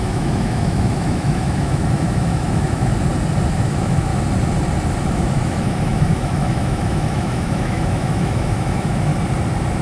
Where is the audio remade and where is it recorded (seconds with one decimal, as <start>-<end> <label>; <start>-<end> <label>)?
0.0-2.9 remade; 2.9-3.5 recorded; 3.5-4.1 remade; 4.1-5.1 recorded; 5.1-9.1 remade; 9.1-9.8 recorded